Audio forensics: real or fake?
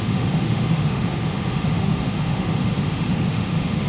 fake